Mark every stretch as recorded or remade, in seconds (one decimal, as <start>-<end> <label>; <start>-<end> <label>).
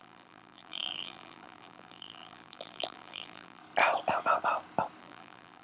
0.0-3.6 remade; 3.6-5.0 recorded; 5.0-5.6 remade